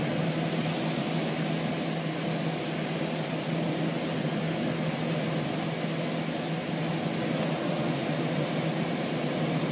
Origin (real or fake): real